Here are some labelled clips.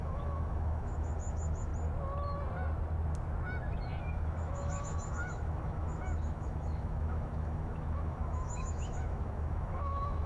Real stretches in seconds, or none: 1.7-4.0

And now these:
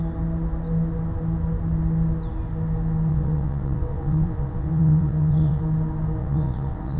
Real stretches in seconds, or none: 0.0-3.1; 5.6-6.2

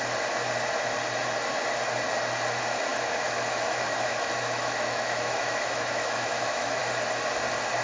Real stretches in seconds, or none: 0.0-2.9; 6.8-7.8

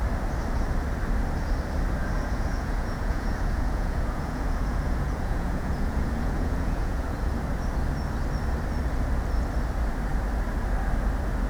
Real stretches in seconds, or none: 0.0-2.0; 7.2-11.5

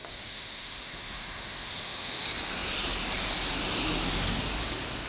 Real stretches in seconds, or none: 2.2-5.1

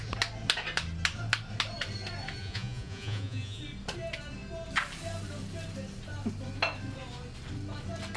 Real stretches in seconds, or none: 0.0-2.4; 3.6-8.2